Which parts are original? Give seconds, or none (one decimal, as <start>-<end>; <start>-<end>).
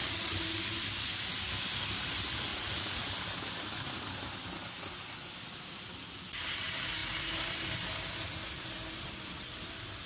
0.0-2.5; 3.1-10.1